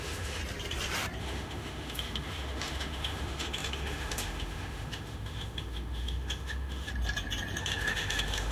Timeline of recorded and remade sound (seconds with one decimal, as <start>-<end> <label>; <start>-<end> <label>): 0.0-0.4 remade; 0.4-1.2 recorded; 1.2-6.9 remade; 6.9-7.6 recorded; 7.6-8.5 remade